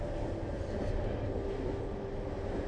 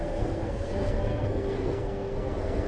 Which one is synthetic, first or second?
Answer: second